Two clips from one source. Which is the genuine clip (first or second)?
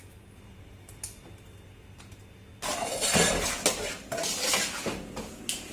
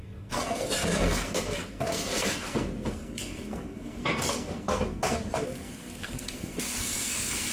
first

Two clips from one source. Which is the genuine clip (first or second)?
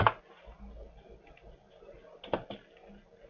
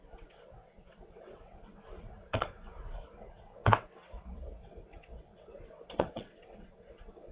first